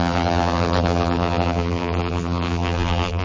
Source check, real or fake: fake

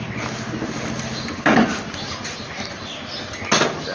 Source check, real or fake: real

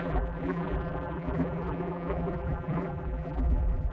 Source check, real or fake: fake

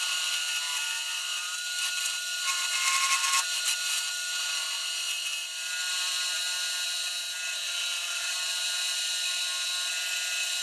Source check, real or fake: real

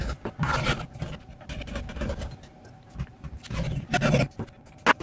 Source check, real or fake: real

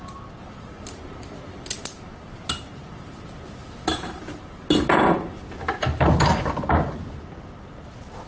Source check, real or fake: real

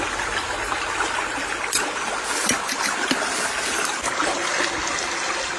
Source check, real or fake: real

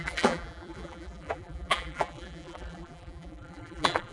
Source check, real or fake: fake